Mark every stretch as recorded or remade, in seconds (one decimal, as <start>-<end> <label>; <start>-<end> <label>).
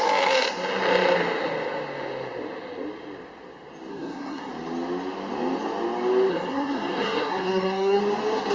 0.0-3.9 recorded; 3.9-4.5 remade; 4.5-6.3 recorded; 6.3-8.0 remade; 8.0-8.5 recorded